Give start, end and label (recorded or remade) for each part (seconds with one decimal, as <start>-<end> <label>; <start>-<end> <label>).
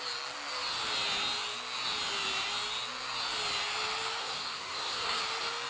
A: 0.0-4.2 recorded; 4.2-5.2 remade; 5.2-5.7 recorded